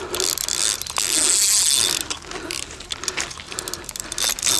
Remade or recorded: recorded